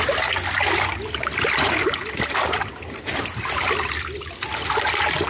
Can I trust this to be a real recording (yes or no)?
yes